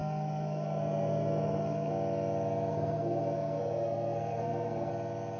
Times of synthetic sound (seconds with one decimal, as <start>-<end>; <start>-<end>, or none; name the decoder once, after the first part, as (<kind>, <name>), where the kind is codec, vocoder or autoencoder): 0.0-1.9 (codec, SNAC); 2.7-4.9